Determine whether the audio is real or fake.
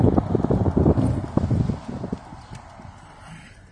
real